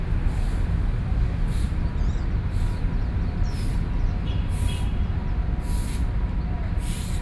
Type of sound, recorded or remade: recorded